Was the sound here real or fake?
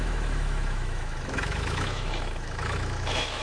fake